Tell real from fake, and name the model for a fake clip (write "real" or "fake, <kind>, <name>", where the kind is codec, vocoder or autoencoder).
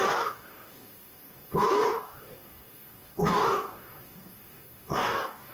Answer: fake, codec, DAC